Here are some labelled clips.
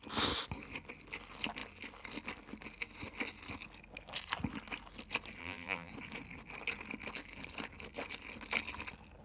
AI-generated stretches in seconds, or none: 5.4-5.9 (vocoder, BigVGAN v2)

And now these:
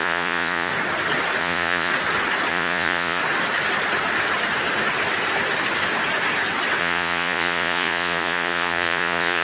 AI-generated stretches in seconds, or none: 0.0-0.7 (vocoder, Vocos); 1.4-1.9; 2.5-3.2; 6.8-9.4